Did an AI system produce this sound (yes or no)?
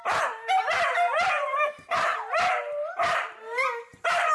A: yes